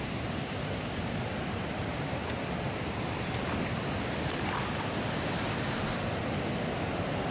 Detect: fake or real real